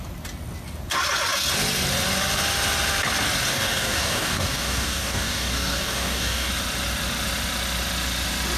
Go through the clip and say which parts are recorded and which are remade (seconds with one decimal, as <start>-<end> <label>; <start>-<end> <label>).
0.0-3.5 recorded; 3.5-6.5 remade; 6.5-8.6 recorded